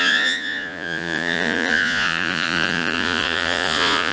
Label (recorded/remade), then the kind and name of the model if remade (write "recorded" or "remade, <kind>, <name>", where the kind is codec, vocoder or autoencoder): remade, vocoder, Vocos